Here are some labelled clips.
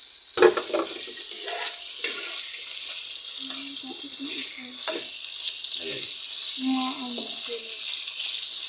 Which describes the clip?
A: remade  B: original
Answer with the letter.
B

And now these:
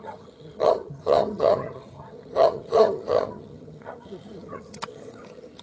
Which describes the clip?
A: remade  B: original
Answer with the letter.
A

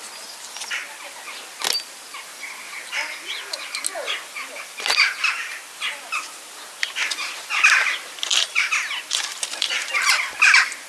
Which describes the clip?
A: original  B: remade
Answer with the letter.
A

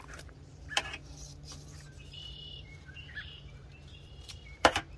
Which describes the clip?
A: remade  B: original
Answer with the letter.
A